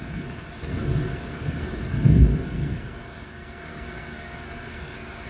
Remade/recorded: remade